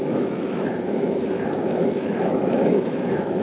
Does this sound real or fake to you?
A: fake